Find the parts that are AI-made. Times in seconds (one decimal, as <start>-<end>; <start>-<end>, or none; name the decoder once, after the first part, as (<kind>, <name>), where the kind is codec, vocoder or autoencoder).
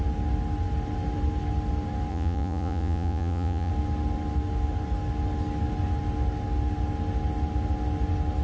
2.1-3.7 (vocoder, Vocos)